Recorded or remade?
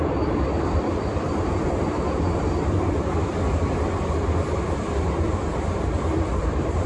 remade